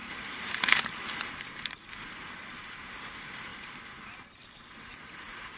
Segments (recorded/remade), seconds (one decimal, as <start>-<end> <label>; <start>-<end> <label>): 0.0-3.5 remade; 3.5-4.9 recorded; 4.9-5.6 remade